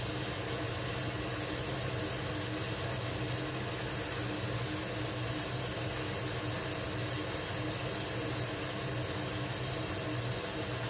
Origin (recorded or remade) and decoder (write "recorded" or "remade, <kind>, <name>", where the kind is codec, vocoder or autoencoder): recorded